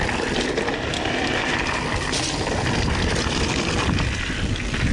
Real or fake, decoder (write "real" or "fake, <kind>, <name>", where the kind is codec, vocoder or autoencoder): real